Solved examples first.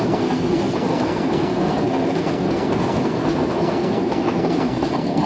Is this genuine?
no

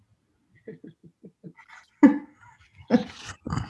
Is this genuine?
yes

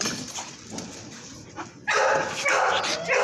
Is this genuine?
yes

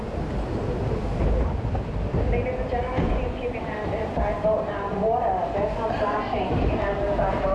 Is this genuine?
yes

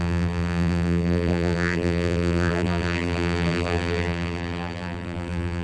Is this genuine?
no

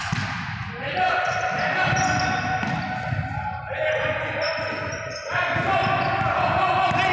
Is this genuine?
yes